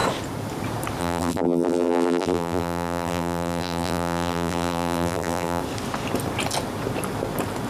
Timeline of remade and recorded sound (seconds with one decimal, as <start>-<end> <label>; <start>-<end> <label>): 0.0-1.0 recorded; 1.0-5.6 remade; 5.6-7.7 recorded